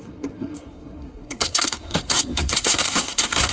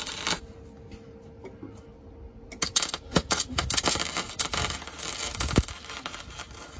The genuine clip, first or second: second